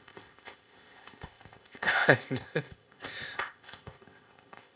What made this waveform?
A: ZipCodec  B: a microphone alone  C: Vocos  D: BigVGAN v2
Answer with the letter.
A